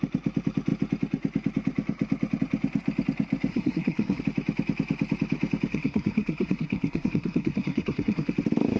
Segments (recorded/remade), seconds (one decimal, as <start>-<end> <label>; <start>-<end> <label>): 0.0-3.5 recorded; 3.5-4.2 remade; 4.2-5.7 recorded; 5.7-8.3 remade; 8.3-8.8 recorded